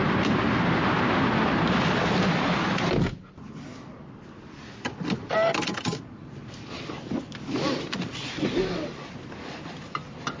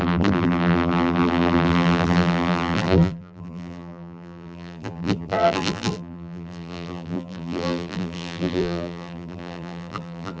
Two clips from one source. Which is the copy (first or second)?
second